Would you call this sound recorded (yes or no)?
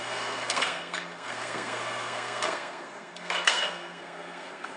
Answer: no